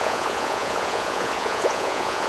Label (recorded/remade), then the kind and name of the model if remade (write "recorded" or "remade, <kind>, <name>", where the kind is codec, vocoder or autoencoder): remade, vocoder, Vocos